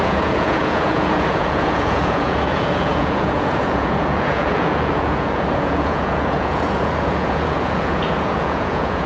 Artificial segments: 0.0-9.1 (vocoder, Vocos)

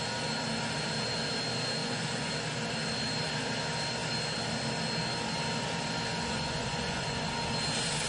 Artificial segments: 1.8-2.3 (vocoder, Vocos); 6.1-7.3